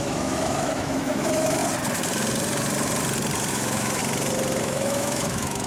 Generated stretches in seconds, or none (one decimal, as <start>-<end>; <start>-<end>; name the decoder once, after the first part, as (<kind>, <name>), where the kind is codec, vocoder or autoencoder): 0.0-1.6 (autoencoder, DAC-VAE); 3.5-4.0; 4.6-5.7